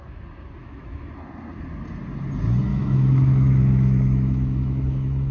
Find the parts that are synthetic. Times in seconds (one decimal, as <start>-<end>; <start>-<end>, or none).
0.6-1.1; 2.7-5.3